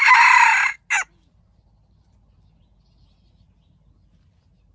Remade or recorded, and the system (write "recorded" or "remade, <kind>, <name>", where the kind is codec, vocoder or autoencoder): recorded